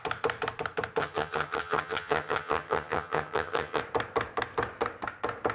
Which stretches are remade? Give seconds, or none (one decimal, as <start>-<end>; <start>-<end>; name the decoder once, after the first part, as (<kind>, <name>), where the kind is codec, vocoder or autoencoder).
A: 1.0-3.8 (vocoder, HiFi-GAN)